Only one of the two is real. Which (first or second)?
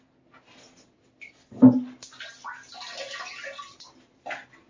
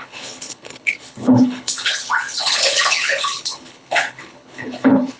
first